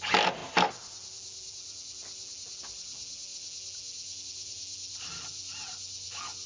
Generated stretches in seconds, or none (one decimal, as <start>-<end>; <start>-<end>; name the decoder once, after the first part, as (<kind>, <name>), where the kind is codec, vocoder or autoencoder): none